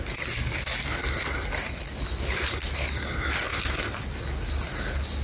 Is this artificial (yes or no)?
no